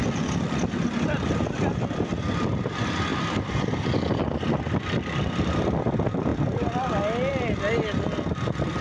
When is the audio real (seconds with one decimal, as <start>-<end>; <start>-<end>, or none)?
0.0-8.8